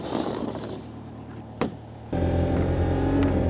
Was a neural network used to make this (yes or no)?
no